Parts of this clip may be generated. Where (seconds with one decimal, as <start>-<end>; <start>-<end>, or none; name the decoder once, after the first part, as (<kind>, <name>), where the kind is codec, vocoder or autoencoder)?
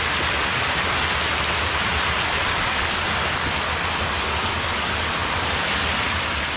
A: none